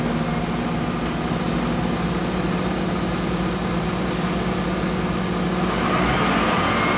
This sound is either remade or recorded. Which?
recorded